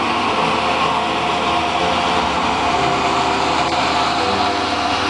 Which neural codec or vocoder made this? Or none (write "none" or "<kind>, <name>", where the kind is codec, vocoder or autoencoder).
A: none